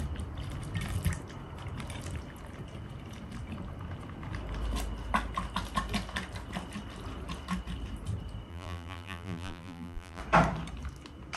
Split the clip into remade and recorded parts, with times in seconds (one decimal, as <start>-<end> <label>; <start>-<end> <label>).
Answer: 0.0-8.5 recorded; 8.5-10.2 remade; 10.2-11.4 recorded